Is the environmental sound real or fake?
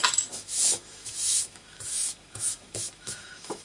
fake